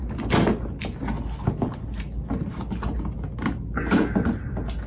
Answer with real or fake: real